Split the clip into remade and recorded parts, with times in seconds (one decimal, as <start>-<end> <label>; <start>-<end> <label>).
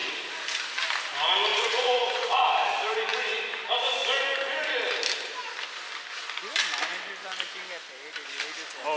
0.0-1.5 recorded; 1.5-2.5 remade; 2.5-9.0 recorded